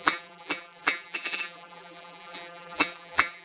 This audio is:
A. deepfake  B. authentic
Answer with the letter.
A